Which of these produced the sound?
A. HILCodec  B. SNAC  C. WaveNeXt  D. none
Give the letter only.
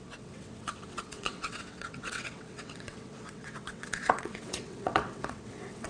C